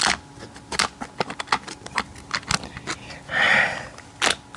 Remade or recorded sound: recorded